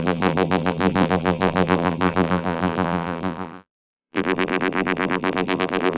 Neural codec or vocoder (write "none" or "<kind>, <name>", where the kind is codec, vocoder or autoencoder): vocoder, BigVGAN v2